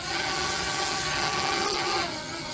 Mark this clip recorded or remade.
remade